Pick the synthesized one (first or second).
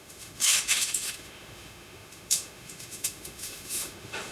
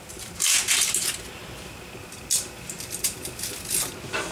first